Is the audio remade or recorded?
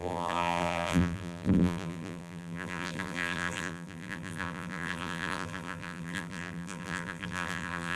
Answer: remade